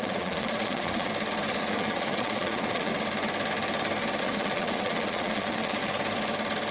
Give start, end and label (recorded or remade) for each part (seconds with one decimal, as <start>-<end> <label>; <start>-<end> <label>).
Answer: 0.0-1.1 remade; 1.1-1.6 recorded; 1.6-2.9 remade; 2.9-4.2 recorded; 4.2-5.8 remade; 5.8-6.7 recorded